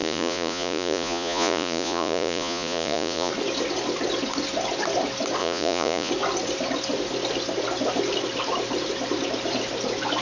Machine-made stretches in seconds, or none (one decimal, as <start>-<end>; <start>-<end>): 0.0-3.3; 5.4-6.1